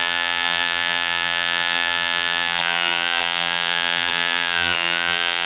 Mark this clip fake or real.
fake